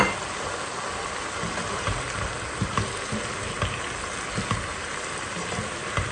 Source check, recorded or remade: recorded